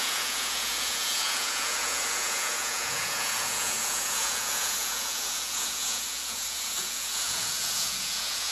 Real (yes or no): no